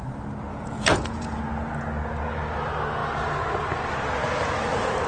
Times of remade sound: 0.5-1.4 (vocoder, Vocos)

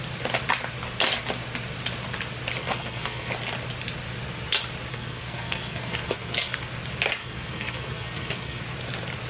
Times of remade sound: 2.6-3.3 (codec, SNAC); 4.9-6.7; 7.2-8.6

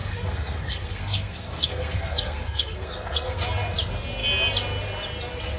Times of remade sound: 0.0-3.4 (codec, SNAC)

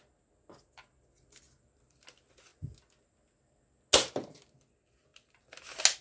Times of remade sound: none

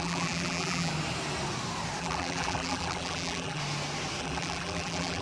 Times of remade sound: 0.0-0.9 (vocoder, BigVGAN v2); 2.0-3.6; 4.2-5.2